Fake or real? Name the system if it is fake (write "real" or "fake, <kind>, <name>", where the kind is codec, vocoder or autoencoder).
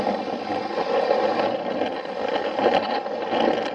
real